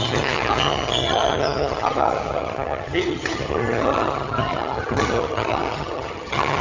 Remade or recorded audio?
remade